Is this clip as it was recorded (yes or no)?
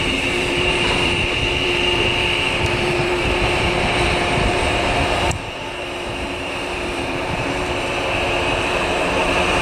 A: no